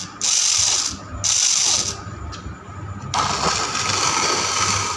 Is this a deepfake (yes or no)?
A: no